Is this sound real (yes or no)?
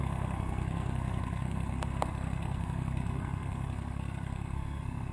no